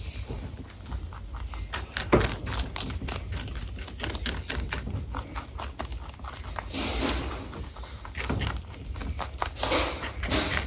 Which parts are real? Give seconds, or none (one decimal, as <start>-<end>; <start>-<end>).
0.0-10.7